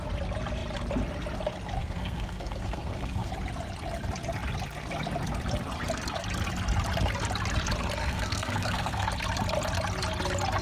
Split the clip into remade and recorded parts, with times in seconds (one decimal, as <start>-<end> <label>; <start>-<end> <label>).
0.0-1.8 recorded; 1.8-3.3 remade; 3.3-8.0 recorded; 8.0-9.1 remade; 9.1-10.6 recorded